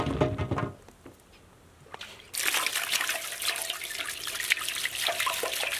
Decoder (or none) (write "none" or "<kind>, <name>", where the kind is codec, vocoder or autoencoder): none